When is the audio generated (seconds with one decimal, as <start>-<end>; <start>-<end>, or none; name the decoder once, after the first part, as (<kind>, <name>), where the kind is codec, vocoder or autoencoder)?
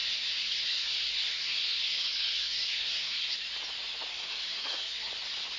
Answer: 0.0-3.4 (codec, SNAC); 4.1-5.1